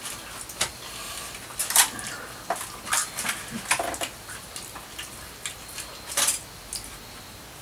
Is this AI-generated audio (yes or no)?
no